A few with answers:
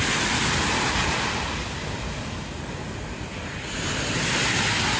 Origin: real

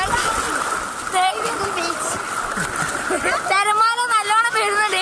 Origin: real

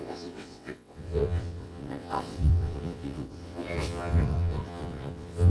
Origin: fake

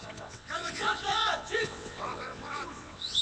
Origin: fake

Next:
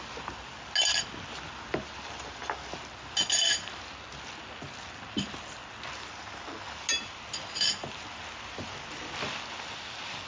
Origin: real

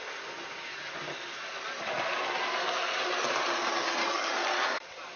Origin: real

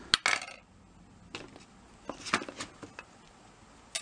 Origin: real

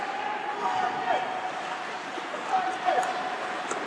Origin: real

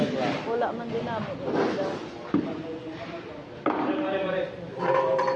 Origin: real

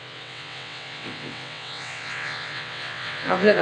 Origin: fake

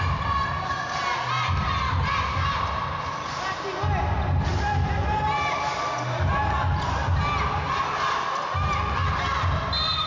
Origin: real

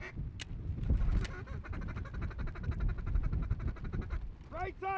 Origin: real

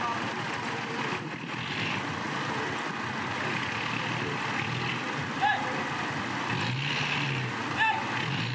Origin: real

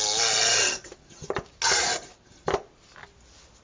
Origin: real